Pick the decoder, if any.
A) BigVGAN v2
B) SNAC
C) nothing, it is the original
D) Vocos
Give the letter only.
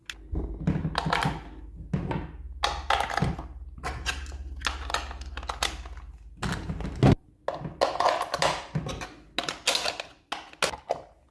C